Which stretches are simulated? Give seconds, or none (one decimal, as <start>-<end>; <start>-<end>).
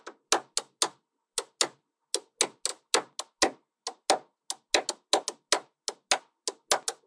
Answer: none